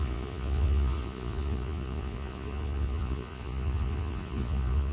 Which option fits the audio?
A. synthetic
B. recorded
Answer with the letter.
A